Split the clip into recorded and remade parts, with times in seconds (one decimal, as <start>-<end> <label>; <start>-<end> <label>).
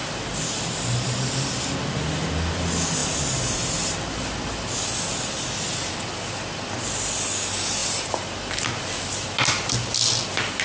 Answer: 0.0-10.6 recorded